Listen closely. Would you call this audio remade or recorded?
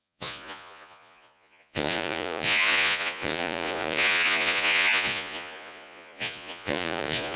remade